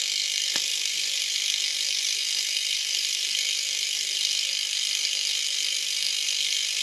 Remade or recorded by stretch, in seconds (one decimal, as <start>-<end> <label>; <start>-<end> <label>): 0.0-6.8 remade

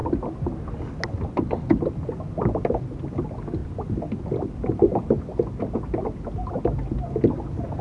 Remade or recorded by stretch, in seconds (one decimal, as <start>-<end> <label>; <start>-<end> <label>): 0.0-7.8 recorded